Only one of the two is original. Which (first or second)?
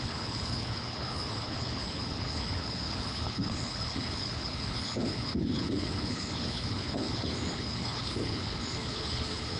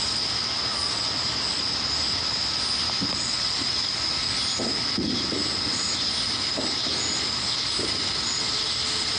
second